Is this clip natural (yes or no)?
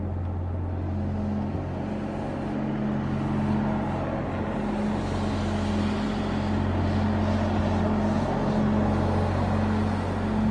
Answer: yes